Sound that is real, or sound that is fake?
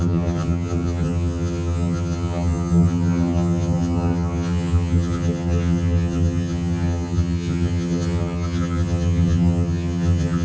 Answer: fake